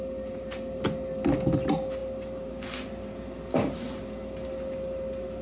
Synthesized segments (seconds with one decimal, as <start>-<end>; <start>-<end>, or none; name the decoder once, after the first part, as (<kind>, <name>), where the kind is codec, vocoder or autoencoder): none